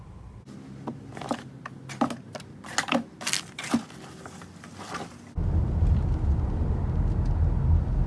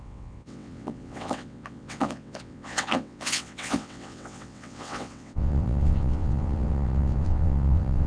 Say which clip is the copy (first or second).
second